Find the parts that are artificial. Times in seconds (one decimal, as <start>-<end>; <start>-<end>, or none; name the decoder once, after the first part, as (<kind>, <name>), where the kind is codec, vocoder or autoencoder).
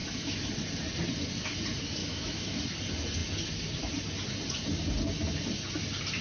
0.0-0.5 (autoencoder, DAC-VAE); 2.0-2.6